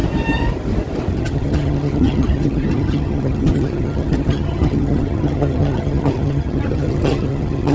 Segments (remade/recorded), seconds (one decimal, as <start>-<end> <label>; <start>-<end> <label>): 0.0-1.1 recorded; 1.1-7.7 remade